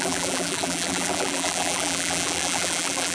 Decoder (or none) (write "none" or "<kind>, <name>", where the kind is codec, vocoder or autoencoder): vocoder, BigVGAN v2